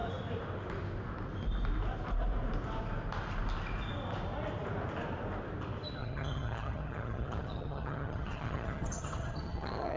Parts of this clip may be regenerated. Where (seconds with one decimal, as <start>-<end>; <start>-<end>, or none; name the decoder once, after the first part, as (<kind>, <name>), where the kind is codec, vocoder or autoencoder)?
6.0-10.0 (vocoder, HiFi-GAN)